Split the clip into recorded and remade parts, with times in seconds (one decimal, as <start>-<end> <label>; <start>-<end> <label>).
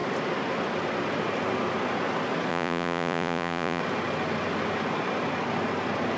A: 0.0-2.5 recorded; 2.5-3.8 remade; 3.8-6.2 recorded